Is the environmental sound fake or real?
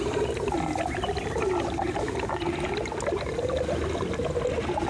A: real